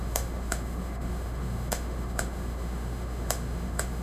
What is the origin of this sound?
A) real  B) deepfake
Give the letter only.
B